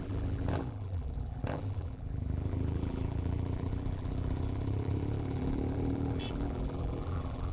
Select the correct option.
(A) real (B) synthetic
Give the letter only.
B